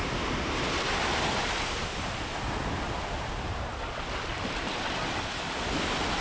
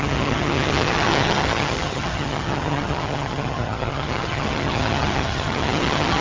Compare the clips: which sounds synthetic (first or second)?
second